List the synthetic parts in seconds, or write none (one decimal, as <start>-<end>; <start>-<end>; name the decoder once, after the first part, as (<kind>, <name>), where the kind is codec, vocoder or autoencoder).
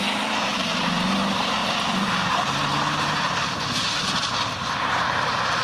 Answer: 0.0-1.6 (vocoder, BigVGAN v2); 2.1-5.6